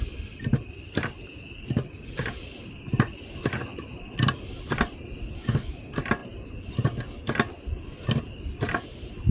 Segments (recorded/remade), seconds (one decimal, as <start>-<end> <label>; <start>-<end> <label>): 0.0-9.3 recorded